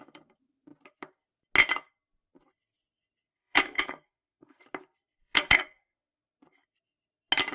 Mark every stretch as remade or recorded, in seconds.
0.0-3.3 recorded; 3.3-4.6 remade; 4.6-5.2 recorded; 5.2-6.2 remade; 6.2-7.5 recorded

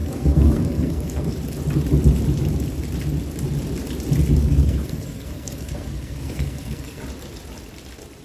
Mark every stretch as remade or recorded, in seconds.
0.0-1.3 remade; 1.3-4.4 recorded; 4.4-7.0 remade; 7.0-8.2 recorded

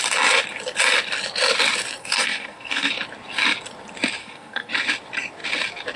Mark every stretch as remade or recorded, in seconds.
0.0-2.0 recorded; 2.0-2.9 remade; 2.9-4.2 recorded; 4.2-4.7 remade; 4.7-6.0 recorded